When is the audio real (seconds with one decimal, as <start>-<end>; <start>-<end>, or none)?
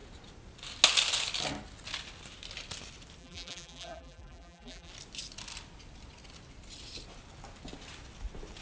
0.0-3.2; 4.9-8.6